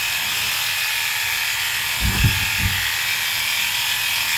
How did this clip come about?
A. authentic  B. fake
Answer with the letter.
A